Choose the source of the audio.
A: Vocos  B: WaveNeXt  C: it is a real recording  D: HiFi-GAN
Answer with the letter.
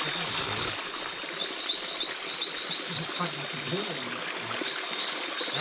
C